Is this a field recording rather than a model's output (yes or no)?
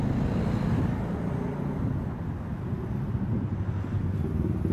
yes